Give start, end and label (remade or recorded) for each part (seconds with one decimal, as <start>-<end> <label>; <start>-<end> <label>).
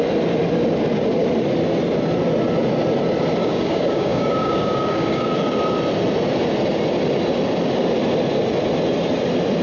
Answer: 0.0-3.4 recorded; 3.4-5.3 remade; 5.3-9.6 recorded